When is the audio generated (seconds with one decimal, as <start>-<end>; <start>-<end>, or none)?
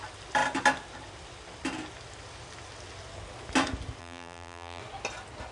4.0-4.8